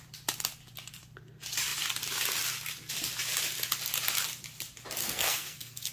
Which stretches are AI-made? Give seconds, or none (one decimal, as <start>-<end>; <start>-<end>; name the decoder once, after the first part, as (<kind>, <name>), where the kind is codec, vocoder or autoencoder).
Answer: 5.0-5.9 (codec, SNAC)